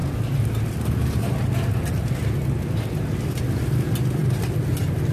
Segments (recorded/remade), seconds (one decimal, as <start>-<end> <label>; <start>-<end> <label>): 0.0-5.1 recorded